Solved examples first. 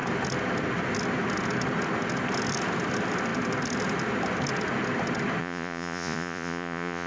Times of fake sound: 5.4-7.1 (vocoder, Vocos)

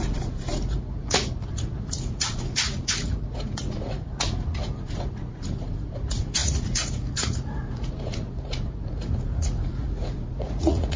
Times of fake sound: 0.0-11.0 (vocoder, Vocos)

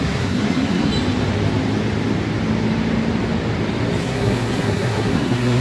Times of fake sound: 0.0-0.9 (codec, SNAC); 4.0-5.6